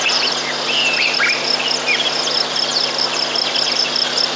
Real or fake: real